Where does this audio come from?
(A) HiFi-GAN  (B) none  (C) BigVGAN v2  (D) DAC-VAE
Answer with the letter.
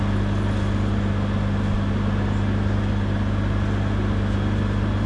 B